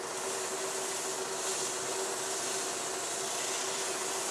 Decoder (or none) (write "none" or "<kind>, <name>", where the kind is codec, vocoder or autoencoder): none